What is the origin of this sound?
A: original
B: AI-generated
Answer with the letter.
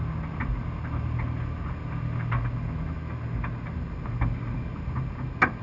A